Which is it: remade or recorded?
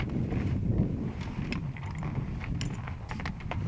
recorded